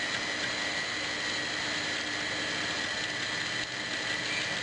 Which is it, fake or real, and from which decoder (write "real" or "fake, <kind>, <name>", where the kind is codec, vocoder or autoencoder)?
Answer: real